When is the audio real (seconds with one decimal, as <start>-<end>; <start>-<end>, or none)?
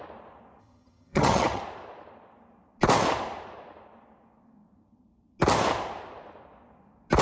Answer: 0.0-0.6; 1.6-7.2